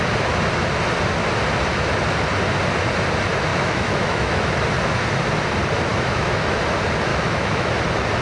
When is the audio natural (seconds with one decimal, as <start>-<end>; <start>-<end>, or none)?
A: 0.0-3.5; 4.5-5.9; 6.6-7.1; 7.7-8.2

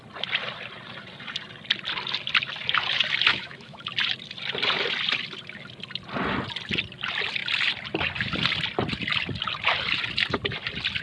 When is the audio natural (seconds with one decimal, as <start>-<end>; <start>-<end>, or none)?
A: 0.0-3.3; 3.8-11.0

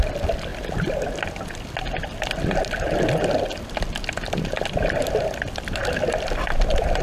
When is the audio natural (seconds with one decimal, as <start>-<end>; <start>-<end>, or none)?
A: 0.0-7.0

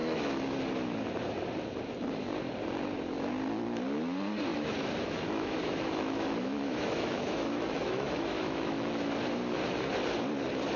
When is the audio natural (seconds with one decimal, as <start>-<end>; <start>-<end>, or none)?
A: 0.6-4.5; 9.1-10.8

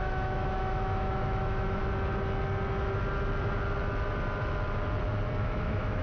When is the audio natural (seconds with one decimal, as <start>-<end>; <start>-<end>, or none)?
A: 1.8-5.4

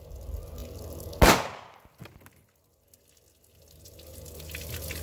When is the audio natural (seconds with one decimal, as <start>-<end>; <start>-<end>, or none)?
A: 0.0-5.0

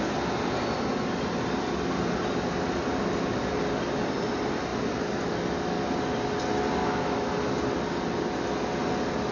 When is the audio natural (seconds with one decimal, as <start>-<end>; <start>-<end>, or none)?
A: 0.0-6.8; 7.3-9.3

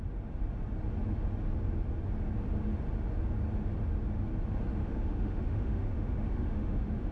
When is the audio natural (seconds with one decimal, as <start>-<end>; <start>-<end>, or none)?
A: 0.0-4.8